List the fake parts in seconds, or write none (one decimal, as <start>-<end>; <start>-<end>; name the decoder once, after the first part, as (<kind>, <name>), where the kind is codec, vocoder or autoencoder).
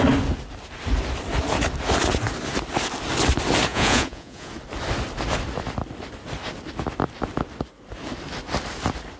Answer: 3.7-4.5 (vocoder, Vocos)